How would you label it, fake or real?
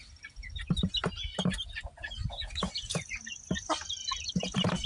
real